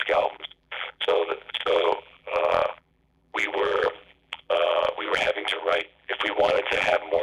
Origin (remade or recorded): remade